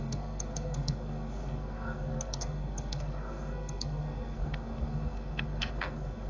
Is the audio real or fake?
fake